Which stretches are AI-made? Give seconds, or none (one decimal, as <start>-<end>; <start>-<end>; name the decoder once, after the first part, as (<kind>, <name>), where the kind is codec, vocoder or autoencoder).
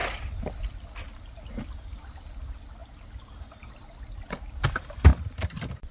0.0-0.6 (vocoder, BigVGAN v2)